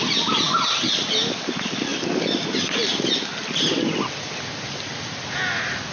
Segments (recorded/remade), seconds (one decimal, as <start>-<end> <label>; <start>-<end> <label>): 0.0-5.9 recorded